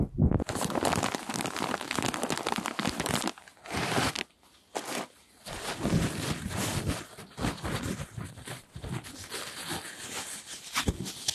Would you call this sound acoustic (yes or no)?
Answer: yes